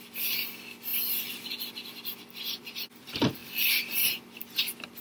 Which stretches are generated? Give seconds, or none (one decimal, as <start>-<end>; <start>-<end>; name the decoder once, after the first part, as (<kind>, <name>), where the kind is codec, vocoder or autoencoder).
none